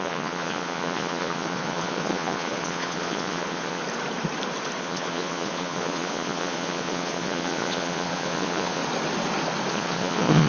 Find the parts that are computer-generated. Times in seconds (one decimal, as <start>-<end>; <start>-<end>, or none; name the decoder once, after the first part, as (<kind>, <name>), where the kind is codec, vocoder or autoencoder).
0.0-3.8 (vocoder, Vocos); 4.8-8.8; 9.7-10.5

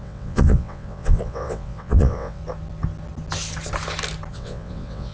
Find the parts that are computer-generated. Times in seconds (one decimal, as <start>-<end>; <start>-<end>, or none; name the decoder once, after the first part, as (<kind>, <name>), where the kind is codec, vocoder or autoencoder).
0.0-2.4 (vocoder, WaveNeXt); 4.3-5.1

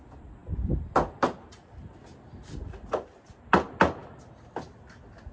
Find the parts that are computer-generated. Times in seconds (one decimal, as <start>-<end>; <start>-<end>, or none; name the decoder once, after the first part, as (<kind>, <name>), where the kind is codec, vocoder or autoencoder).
none

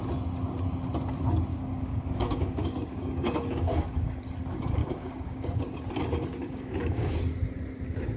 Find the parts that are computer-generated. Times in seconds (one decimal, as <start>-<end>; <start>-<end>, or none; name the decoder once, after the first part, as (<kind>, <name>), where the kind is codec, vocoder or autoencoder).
1.5-4.2 (codec, DAC); 4.8-5.6; 6.3-7.2

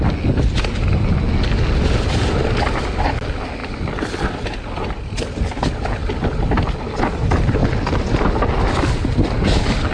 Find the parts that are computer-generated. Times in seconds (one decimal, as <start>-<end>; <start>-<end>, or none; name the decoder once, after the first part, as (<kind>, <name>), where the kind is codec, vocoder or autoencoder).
none

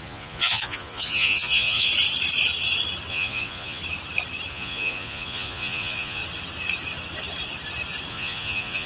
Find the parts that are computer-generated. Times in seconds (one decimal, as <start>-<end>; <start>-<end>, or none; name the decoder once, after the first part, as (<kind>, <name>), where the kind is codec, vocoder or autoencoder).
0.0-1.9 (vocoder, Vocos); 3.1-3.8; 4.5-6.2; 8.1-8.9

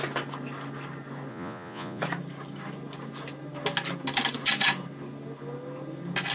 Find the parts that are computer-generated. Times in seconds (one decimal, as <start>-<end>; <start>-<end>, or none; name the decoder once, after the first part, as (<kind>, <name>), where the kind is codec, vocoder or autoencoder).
1.3-2.0 (vocoder, Vocos)

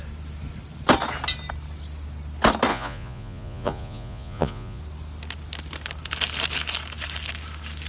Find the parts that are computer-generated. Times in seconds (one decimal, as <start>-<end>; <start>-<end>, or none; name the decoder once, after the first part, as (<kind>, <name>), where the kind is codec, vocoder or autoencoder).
2.7-4.8 (vocoder, Vocos)